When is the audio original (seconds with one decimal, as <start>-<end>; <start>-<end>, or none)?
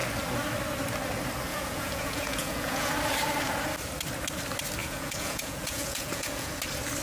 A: 0.0-1.5; 2.9-4.8; 6.5-7.0